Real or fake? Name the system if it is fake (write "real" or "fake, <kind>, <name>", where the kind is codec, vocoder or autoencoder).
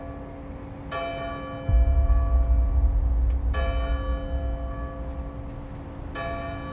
real